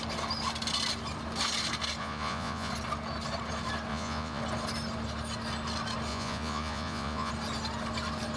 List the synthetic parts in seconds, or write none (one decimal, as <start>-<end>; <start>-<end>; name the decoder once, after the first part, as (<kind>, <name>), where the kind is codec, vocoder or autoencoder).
2.0-2.7 (vocoder, Vocos); 3.9-4.4; 6.1-7.3

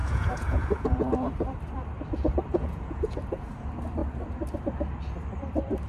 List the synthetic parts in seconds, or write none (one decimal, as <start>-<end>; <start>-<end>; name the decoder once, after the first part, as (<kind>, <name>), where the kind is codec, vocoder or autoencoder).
0.0-1.1 (vocoder, Vocos); 2.5-3.5